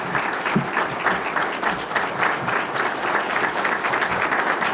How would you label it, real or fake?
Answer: real